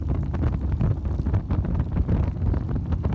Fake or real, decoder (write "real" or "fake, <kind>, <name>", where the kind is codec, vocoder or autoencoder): real